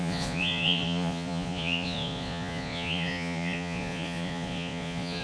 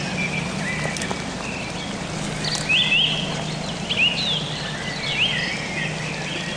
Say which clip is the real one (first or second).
second